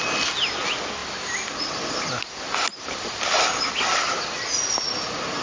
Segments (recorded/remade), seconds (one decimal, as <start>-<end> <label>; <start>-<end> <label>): 0.0-5.4 recorded